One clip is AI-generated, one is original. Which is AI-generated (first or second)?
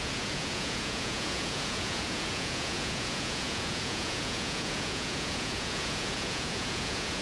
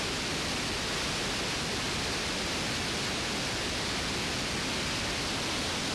first